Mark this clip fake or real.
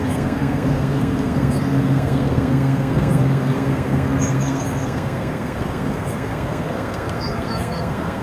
fake